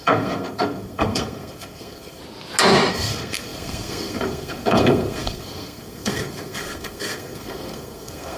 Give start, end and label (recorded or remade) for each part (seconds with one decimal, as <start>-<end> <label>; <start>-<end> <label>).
0.0-2.2 remade; 2.2-2.9 recorded; 2.9-8.4 remade